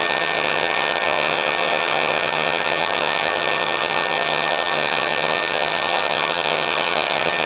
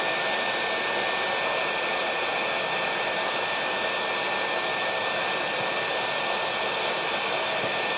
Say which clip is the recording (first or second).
second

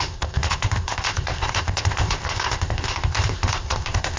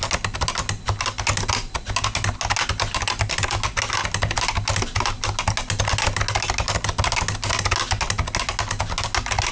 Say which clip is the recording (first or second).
second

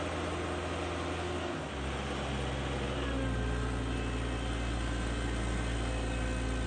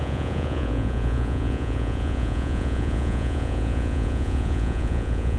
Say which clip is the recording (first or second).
first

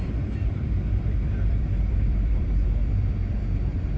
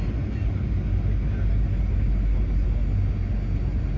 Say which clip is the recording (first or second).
second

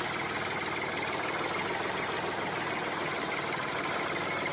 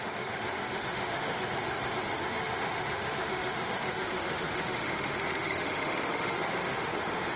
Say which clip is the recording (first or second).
first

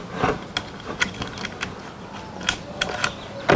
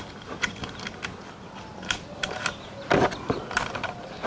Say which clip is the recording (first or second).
first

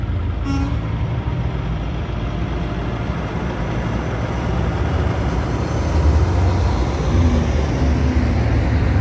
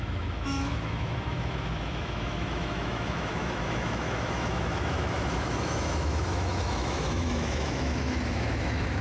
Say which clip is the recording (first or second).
first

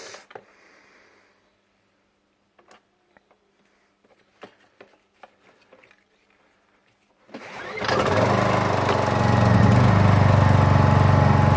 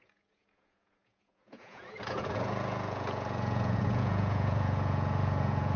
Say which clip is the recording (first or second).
first